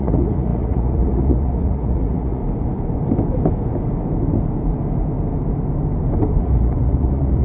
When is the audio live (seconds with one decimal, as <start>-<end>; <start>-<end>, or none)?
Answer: 2.4-6.4